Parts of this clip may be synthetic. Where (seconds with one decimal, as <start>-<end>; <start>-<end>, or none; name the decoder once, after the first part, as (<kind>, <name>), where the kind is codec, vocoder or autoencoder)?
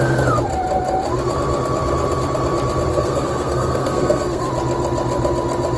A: 2.9-4.5 (codec, SNAC)